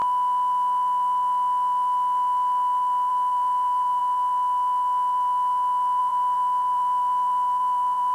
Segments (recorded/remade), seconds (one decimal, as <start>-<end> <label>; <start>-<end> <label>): 0.0-3.1 recorded; 3.1-4.0 remade; 4.0-6.0 recorded; 6.0-8.1 remade

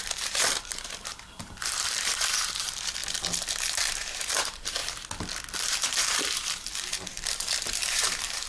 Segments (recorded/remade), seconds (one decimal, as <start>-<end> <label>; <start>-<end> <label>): 0.0-3.0 remade; 3.0-3.9 recorded; 3.9-4.8 remade; 4.8-5.6 recorded; 5.6-8.5 remade

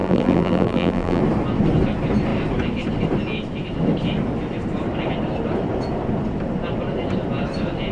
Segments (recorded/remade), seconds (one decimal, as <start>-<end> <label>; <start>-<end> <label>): 0.0-1.2 remade; 1.2-7.9 recorded

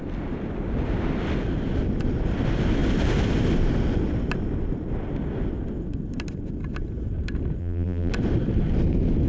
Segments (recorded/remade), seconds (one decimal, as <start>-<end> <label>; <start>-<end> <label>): 0.0-7.6 recorded; 7.6-8.1 remade; 8.1-9.3 recorded